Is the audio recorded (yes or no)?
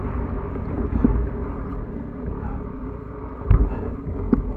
yes